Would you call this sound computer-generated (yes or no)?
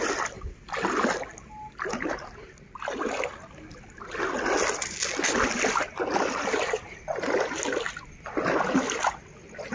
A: no